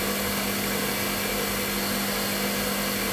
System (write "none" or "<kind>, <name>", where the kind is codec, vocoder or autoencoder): none